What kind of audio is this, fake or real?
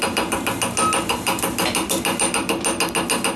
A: real